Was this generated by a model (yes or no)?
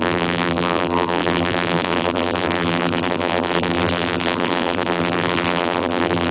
yes